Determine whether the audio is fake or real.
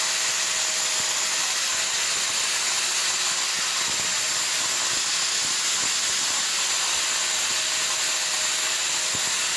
real